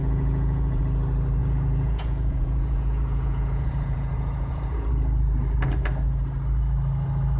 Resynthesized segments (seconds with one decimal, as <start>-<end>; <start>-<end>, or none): 0.0-0.8; 1.4-4.9